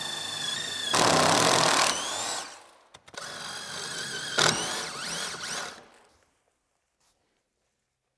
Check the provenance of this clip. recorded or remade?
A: recorded